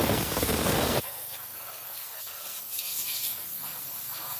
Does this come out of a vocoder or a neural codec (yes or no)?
yes